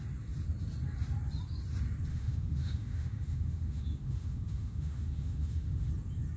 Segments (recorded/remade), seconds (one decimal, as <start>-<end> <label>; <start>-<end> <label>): 0.0-2.1 recorded; 2.1-5.9 remade; 5.9-6.4 recorded